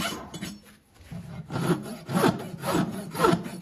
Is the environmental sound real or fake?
real